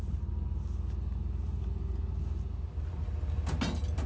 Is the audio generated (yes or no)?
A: no